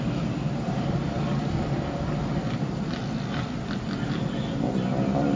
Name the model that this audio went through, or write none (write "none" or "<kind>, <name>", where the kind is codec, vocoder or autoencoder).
none